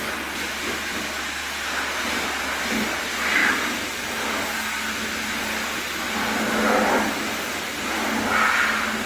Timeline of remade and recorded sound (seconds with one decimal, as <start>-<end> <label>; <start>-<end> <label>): 0.0-9.1 recorded

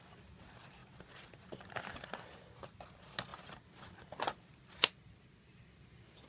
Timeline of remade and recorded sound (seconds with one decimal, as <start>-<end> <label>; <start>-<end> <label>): 0.0-0.8 recorded; 0.8-2.0 remade; 2.0-3.3 recorded; 3.3-5.2 remade; 5.2-6.3 recorded